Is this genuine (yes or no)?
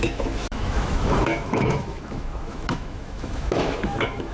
no